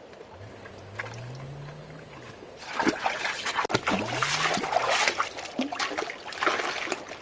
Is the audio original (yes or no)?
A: yes